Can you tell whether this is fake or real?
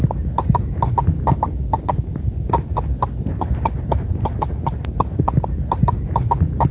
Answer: real